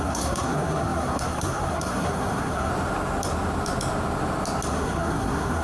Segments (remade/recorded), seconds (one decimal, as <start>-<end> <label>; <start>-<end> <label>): 0.0-2.7 remade; 2.7-4.7 recorded; 4.7-5.6 remade